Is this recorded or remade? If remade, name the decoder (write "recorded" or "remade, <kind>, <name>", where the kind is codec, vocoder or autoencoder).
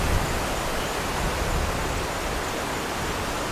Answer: recorded